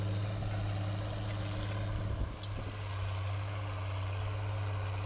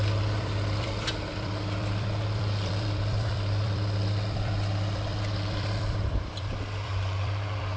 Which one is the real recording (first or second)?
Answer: first